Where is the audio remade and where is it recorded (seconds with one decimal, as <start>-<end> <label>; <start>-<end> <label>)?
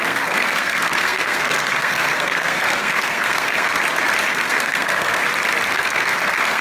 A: 0.0-3.7 remade; 3.7-4.3 recorded; 4.3-5.2 remade; 5.2-5.7 recorded; 5.7-6.6 remade